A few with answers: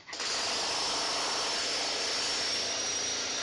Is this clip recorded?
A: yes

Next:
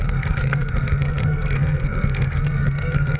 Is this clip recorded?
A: no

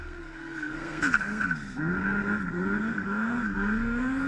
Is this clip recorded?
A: no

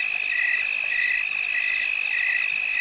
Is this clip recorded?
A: yes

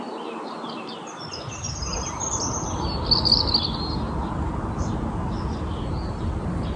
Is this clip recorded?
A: yes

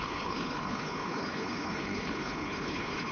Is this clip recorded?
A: no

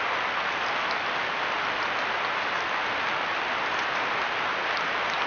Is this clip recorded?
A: yes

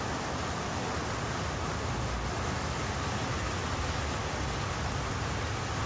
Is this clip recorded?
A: yes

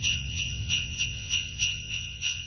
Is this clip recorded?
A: no